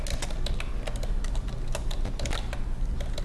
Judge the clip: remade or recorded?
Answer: recorded